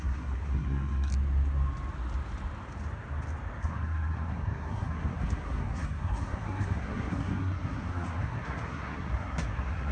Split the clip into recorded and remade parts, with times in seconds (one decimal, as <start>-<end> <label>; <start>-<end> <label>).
0.0-1.1 remade; 1.1-3.6 recorded; 3.6-9.9 remade

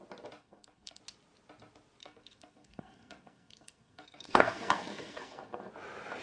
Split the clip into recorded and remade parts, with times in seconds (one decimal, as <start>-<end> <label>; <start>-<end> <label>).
0.0-0.4 recorded; 0.4-1.0 remade; 1.0-2.0 recorded; 2.0-5.7 remade; 5.7-6.2 recorded

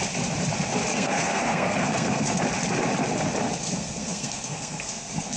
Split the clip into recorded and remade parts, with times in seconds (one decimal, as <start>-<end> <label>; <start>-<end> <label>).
0.0-0.9 recorded; 0.9-2.4 remade; 2.4-3.6 recorded; 3.6-5.4 remade

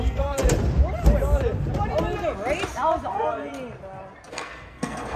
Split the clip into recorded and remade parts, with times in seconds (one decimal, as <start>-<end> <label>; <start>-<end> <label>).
0.0-0.4 remade; 0.4-3.1 recorded; 3.1-3.5 remade; 3.5-4.3 recorded; 4.3-5.2 remade